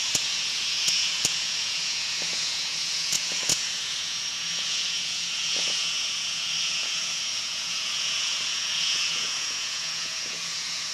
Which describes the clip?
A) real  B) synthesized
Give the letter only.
B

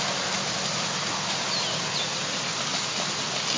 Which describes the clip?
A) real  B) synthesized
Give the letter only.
A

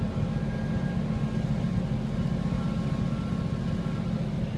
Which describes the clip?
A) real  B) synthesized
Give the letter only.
A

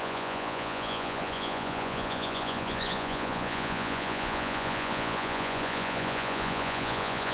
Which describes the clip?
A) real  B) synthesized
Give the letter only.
B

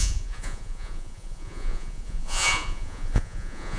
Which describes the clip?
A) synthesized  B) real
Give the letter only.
A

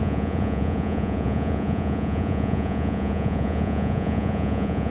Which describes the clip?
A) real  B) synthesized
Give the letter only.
B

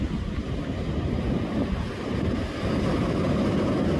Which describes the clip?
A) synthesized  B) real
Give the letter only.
B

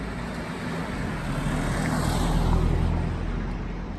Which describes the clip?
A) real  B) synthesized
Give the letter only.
A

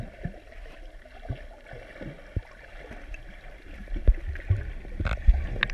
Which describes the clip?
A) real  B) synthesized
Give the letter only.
A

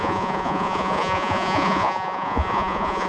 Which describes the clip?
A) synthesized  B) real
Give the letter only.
A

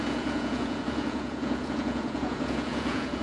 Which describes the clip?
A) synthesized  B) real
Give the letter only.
A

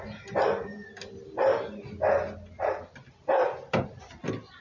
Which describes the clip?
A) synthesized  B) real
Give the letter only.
B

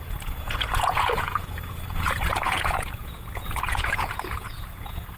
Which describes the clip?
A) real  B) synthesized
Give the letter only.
B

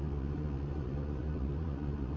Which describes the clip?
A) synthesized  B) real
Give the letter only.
A